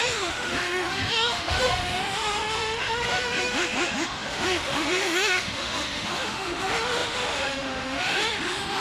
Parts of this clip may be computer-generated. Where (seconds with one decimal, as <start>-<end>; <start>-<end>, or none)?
0.0-8.8